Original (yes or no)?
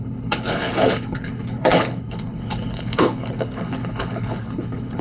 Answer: no